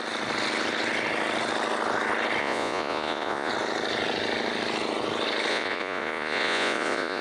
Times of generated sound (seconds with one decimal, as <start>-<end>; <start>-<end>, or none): 2.4-3.5; 5.5-7.2